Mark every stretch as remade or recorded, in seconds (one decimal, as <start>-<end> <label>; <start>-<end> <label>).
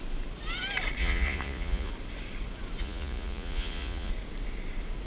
0.0-1.0 recorded; 1.0-1.9 remade; 1.9-2.8 recorded; 2.8-4.1 remade; 4.1-5.1 recorded